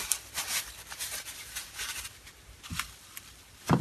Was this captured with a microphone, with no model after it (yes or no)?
no